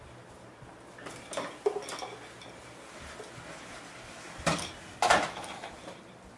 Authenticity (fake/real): real